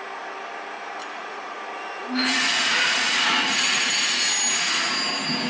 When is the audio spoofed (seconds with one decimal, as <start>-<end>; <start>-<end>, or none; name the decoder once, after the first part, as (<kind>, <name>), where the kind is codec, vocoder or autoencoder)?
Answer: 1.0-1.6 (vocoder, Vocos); 2.0-3.9